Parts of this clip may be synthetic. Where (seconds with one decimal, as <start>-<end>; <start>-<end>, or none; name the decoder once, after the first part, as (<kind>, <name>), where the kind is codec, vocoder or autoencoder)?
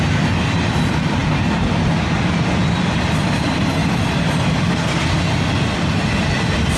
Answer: 3.8-6.8 (vocoder, BigVGAN v2)